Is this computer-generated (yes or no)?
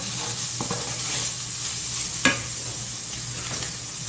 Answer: no